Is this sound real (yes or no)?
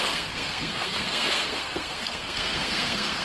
no